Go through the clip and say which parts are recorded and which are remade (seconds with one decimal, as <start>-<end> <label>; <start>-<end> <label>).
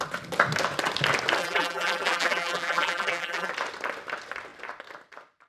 0.0-1.4 recorded; 1.4-3.5 remade; 3.5-5.5 recorded